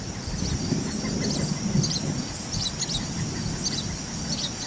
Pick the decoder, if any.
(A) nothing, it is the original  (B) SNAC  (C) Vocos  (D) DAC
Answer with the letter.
A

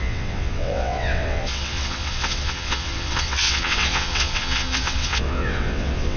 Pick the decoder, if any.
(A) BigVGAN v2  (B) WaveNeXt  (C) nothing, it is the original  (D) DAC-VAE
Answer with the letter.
B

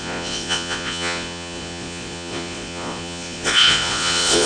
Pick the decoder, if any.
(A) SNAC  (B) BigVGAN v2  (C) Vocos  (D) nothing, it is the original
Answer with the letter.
C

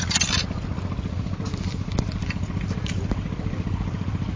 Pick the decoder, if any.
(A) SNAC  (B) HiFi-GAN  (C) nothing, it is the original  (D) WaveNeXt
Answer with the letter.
C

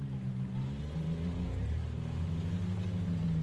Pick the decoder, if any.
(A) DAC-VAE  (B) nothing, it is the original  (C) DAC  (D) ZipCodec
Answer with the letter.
B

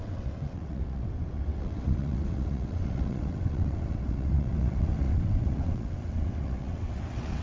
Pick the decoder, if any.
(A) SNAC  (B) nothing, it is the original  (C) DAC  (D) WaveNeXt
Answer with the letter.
D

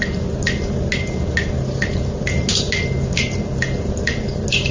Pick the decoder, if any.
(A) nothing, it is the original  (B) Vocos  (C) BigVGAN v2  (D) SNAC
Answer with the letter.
A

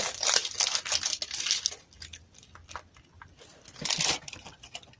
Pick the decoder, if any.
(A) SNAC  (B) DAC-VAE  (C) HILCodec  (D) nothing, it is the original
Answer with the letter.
D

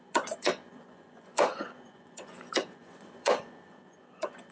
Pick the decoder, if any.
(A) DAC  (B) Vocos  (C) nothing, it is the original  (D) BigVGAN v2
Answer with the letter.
B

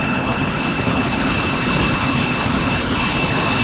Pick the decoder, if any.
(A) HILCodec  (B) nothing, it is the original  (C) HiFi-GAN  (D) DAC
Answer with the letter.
A